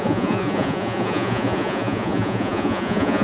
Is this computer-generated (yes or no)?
yes